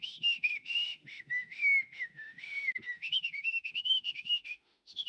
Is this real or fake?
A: fake